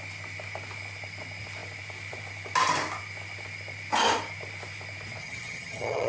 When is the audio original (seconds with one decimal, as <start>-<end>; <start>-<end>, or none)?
0.0-5.2